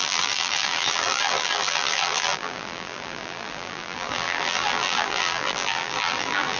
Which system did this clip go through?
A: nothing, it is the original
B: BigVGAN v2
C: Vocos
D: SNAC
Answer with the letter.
B